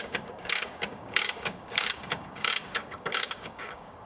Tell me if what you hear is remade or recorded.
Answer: remade